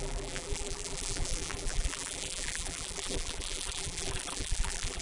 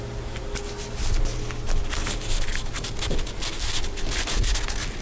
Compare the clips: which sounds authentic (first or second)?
second